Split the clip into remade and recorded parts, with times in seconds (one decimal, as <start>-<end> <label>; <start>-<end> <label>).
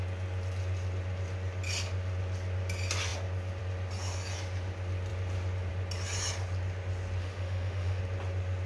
0.0-7.2 recorded; 7.2-8.0 remade; 8.0-8.7 recorded